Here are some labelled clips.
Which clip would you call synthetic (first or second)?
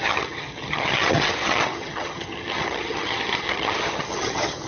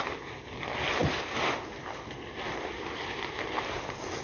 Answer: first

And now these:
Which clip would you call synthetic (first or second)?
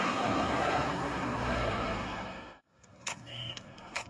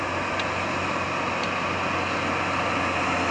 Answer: first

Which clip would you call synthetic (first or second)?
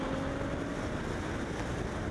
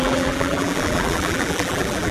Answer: second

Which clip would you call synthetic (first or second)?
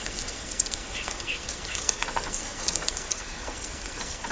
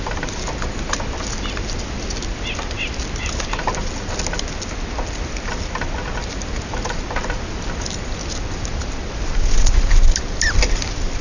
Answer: first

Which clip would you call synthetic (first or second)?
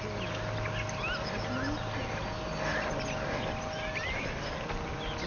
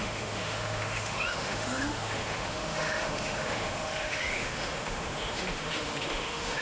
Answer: second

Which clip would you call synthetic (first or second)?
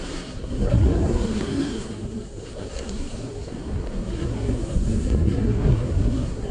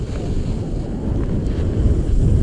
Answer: first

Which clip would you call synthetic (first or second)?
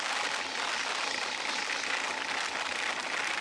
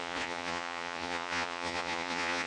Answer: second